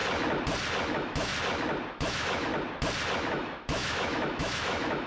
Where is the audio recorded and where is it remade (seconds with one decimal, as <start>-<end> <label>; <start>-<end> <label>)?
0.0-0.9 recorded; 0.9-1.3 remade; 1.3-1.9 recorded; 1.9-2.5 remade; 2.5-3.3 recorded; 3.3-5.1 remade